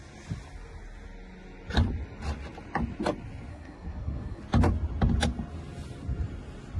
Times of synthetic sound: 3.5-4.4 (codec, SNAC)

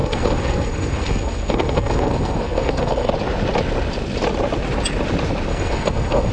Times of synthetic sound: 0.0-3.1 (codec, SNAC); 5.5-6.3

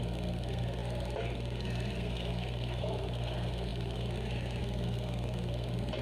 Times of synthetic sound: 0.0-6.0 (codec, SNAC)

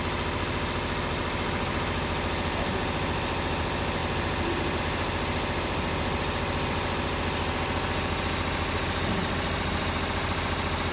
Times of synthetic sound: none

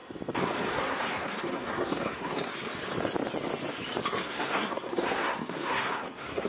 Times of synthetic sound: 0.7-2.5 (codec, SNAC); 4.2-6.5

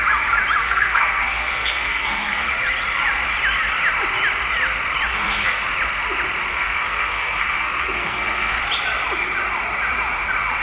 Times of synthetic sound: 0.6-2.5 (codec, SNAC); 5.1-5.6; 6.5-8.6

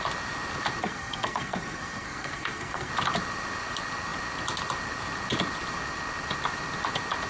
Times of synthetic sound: 0.8-2.9 (codec, SNAC)